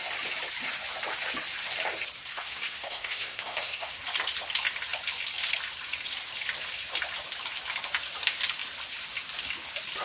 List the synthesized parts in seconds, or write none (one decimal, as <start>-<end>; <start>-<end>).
2.3-3.9